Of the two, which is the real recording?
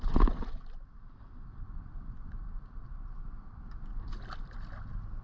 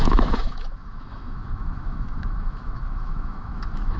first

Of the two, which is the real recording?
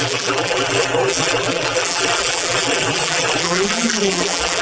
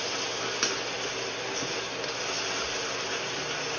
second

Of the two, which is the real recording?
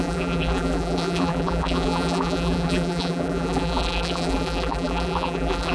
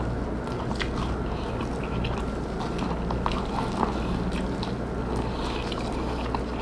second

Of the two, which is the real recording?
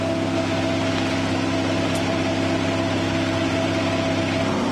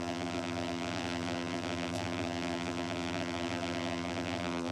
first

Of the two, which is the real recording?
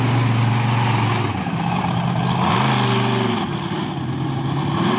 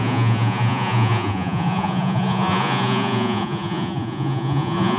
first